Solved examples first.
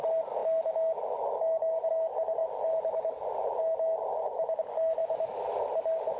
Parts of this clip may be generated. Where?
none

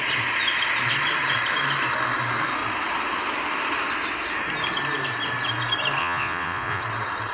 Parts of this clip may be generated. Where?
6.0-6.8 (vocoder, Vocos)

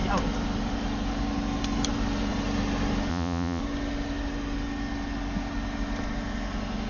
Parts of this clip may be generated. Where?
3.1-3.6 (vocoder, Vocos)

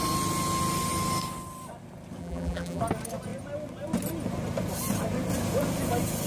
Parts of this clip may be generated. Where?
2.2-2.8 (vocoder, BigVGAN v2)

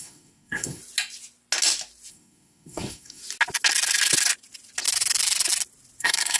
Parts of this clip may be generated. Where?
0.0-0.8 (codec, SNAC); 2.1-3.2; 6.0-6.4

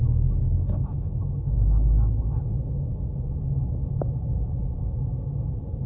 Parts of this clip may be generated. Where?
0.4-3.9 (autoencoder, DAC-VAE)